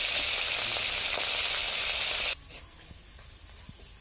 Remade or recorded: recorded